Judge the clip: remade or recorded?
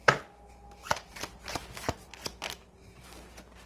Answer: recorded